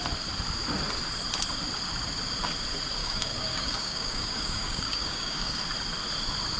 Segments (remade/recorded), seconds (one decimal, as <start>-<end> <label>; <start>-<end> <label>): 0.0-3.0 recorded; 3.0-5.6 remade; 5.6-6.6 recorded

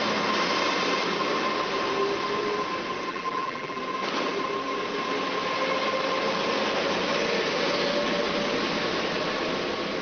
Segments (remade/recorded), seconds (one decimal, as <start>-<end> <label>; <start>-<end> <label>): 0.0-3.1 recorded; 3.1-3.8 remade; 3.8-10.0 recorded

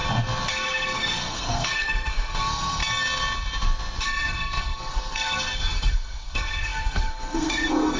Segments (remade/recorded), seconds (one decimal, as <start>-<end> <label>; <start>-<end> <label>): 0.0-0.5 recorded; 0.5-2.8 remade; 2.8-4.0 recorded; 4.0-8.0 remade

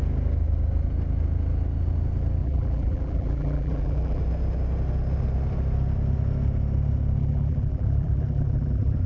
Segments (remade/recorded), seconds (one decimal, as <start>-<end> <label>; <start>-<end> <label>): 0.0-2.4 recorded; 2.4-4.2 remade; 4.2-7.2 recorded; 7.2-9.1 remade

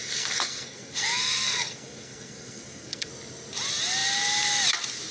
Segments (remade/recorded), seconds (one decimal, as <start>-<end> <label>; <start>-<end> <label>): 0.0-3.1 remade; 3.1-5.1 recorded

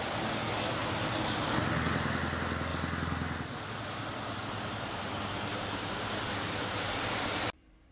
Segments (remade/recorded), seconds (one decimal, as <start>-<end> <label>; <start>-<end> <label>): 0.0-5.5 recorded; 5.5-6.0 remade; 6.0-7.9 recorded